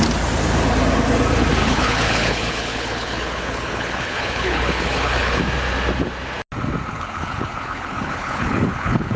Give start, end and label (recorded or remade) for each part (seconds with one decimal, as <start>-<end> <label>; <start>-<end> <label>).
0.0-1.6 recorded; 1.6-5.4 remade; 5.4-6.9 recorded; 6.9-9.2 remade